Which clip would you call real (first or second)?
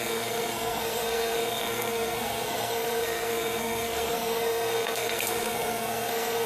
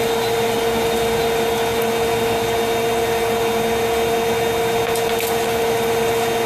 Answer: second